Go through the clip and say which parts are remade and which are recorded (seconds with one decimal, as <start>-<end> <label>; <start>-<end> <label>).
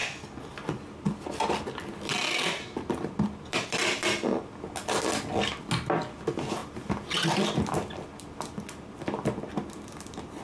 0.0-10.4 recorded